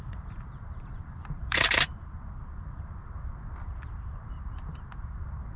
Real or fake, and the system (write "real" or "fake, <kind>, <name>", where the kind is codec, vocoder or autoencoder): fake, vocoder, BigVGAN v2